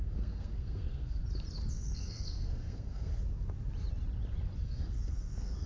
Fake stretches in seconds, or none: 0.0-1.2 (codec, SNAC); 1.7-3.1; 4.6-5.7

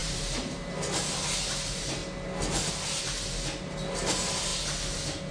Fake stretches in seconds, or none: 0.0-0.7 (vocoder, BigVGAN v2)

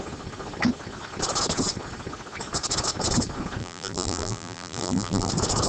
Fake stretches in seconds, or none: 3.6-5.3 (vocoder, BigVGAN v2)

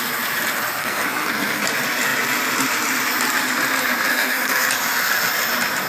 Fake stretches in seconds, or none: 0.8-1.6 (codec, SNAC); 4.1-4.7

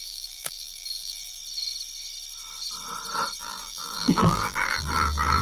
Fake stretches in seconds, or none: 0.0-1.4 (vocoder, BigVGAN v2); 3.4-5.4